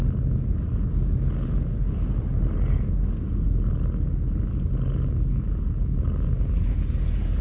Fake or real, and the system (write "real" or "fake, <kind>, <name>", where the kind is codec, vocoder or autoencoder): real